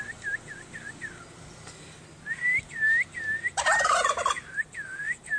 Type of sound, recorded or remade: recorded